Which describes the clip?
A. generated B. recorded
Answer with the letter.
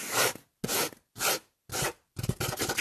B